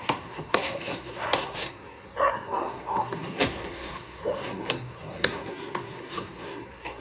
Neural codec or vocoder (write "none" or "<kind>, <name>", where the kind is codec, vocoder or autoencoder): codec, SNAC